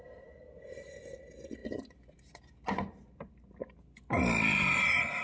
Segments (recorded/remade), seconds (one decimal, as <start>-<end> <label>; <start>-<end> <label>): 0.0-5.2 recorded